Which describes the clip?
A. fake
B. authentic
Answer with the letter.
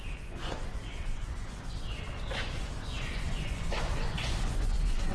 A